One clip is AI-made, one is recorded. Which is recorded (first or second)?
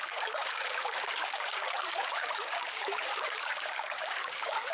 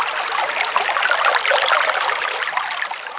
second